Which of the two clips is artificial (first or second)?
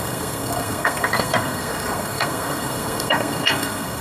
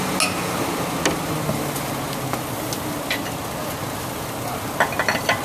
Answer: first